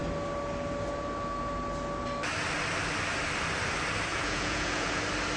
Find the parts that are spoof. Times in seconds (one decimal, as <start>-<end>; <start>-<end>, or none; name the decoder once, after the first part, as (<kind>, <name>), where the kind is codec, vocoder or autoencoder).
4.1-5.0 (vocoder, Vocos)